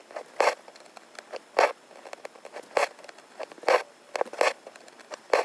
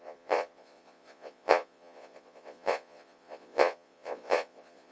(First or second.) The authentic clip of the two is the first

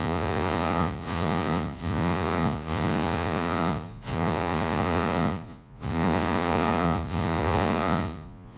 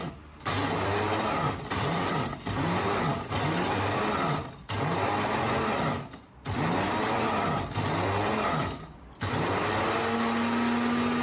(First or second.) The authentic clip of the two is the second